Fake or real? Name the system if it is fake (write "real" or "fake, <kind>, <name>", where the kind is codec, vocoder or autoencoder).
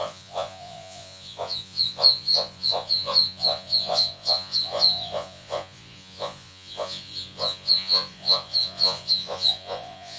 fake, vocoder, Vocos